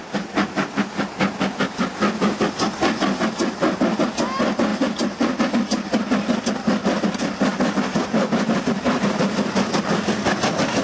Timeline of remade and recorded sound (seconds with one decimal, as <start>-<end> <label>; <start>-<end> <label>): 0.0-10.8 recorded